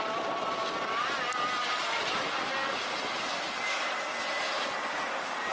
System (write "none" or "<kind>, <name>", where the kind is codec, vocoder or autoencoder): none